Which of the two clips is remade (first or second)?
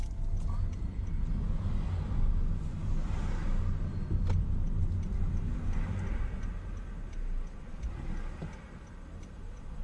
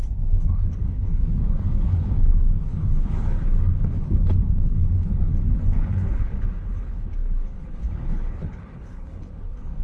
second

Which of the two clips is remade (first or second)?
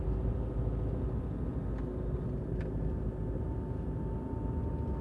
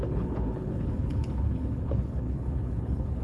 second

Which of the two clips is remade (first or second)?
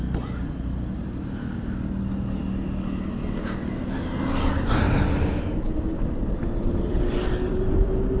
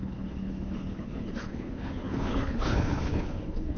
second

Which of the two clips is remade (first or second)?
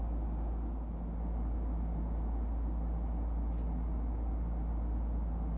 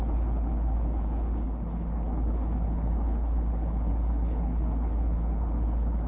second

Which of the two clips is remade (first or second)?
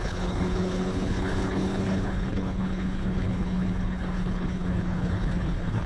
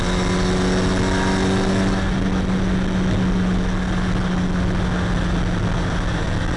first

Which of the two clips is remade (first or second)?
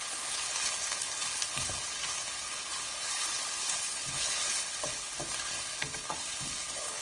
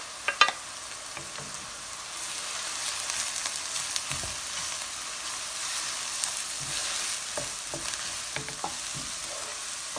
first